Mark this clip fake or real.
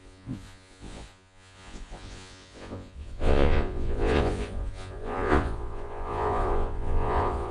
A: fake